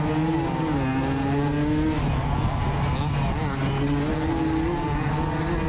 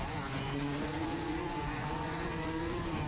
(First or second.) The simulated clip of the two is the second